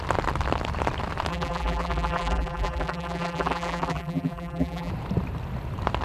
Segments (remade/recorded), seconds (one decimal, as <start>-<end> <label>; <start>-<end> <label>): 0.0-1.3 recorded; 1.3-4.9 remade; 4.9-6.0 recorded